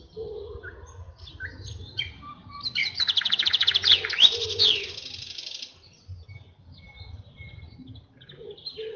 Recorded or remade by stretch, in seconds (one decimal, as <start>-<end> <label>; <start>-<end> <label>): 0.0-2.8 recorded; 2.8-4.9 remade; 4.9-9.0 recorded